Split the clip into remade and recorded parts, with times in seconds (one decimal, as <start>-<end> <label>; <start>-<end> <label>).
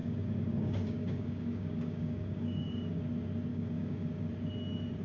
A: 0.0-3.0 remade; 3.0-3.5 recorded; 3.5-4.3 remade; 4.3-5.0 recorded